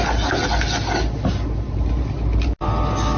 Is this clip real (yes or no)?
yes